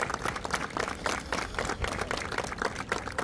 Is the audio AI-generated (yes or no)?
no